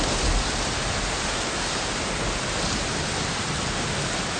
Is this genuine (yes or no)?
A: yes